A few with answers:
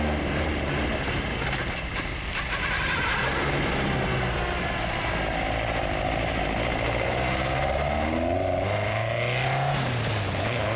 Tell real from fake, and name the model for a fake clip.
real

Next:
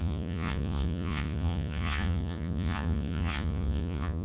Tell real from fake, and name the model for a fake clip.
fake, vocoder, Vocos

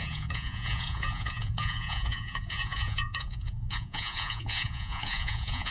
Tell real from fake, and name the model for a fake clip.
fake, vocoder, Vocos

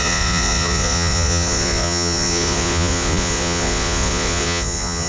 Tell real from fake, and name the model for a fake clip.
fake, vocoder, Vocos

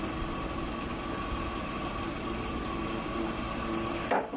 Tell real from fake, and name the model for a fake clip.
real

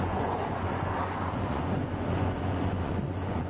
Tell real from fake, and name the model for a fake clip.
fake, vocoder, Vocos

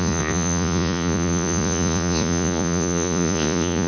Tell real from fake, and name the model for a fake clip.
fake, vocoder, Vocos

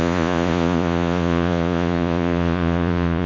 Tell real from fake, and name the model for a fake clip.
fake, vocoder, Vocos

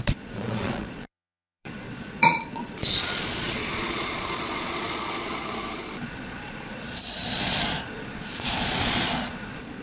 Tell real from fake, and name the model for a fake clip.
fake, vocoder, Vocos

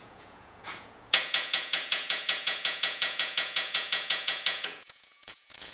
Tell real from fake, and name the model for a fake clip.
fake, vocoder, Vocos